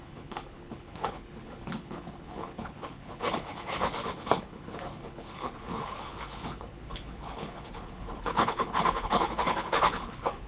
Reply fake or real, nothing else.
fake